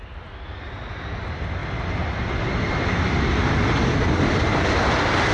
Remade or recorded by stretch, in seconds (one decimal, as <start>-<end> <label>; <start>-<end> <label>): 0.0-5.3 recorded